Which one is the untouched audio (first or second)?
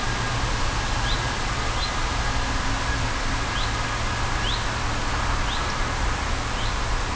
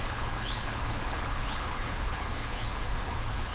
first